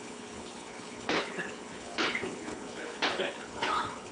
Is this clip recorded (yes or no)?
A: no